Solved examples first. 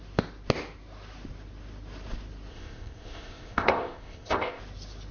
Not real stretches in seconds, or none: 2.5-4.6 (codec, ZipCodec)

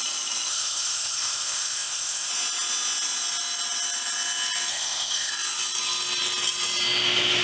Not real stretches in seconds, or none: 0.5-2.3 (codec, ZipCodec); 4.7-5.3

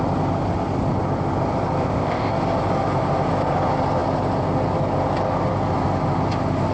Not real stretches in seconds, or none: 1.8-2.3 (codec, ZipCodec)

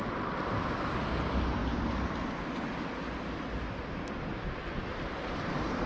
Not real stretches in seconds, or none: none